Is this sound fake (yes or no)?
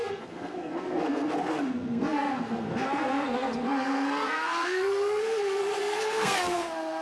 yes